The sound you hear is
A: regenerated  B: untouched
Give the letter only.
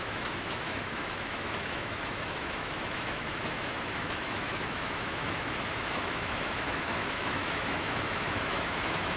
A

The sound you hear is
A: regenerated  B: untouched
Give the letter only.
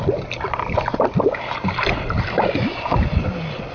B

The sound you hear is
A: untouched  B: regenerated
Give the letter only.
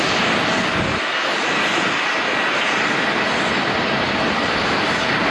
A